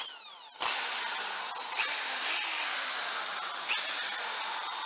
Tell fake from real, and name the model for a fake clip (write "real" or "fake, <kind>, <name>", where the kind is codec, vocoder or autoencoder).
real